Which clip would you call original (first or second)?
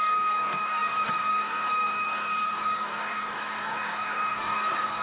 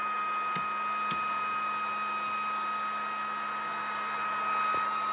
second